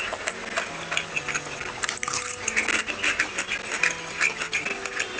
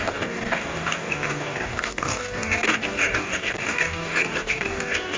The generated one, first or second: second